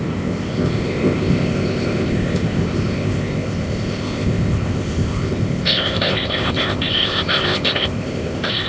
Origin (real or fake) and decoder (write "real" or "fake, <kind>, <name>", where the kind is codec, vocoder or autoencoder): fake, codec, ZipCodec